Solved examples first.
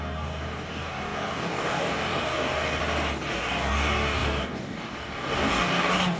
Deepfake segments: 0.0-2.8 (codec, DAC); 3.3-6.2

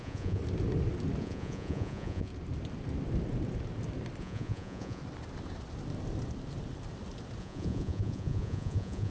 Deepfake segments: 0.0-0.4 (vocoder, Vocos); 1.2-2.3; 4.2-5.0; 7.4-9.1

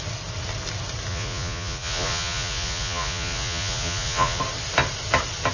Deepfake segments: 1.1-4.4 (vocoder, Vocos)

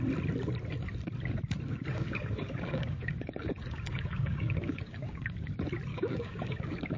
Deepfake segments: 1.7-5.5 (codec, DAC); 5.9-7.0